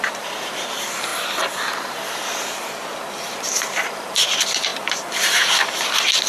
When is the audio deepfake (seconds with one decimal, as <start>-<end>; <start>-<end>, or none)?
0.0-1.1; 3.1-6.3